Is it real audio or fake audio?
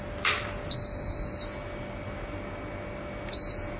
real